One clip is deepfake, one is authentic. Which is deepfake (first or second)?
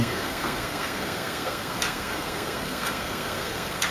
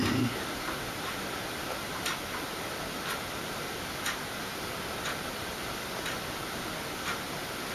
first